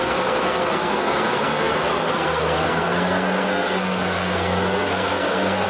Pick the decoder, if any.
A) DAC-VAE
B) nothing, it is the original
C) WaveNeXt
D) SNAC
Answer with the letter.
D